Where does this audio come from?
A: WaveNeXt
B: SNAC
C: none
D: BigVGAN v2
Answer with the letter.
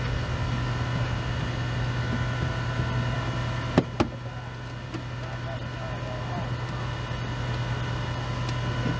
C